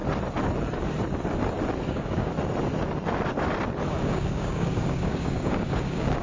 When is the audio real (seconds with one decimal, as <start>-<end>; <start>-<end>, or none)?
0.0-1.9; 2.3-3.9